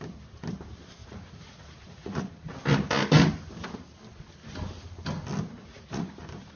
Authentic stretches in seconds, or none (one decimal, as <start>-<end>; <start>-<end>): 0.0-1.0; 2.2-5.6; 6.1-6.6